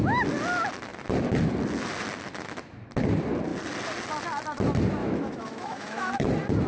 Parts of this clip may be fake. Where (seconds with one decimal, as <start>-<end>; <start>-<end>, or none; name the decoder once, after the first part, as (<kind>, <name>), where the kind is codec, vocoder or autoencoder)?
5.0-6.1 (autoencoder, DAC-VAE)